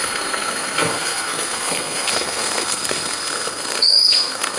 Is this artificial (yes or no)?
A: yes